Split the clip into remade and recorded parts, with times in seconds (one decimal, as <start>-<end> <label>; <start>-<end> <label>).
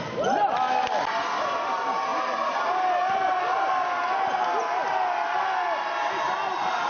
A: 0.0-6.9 recorded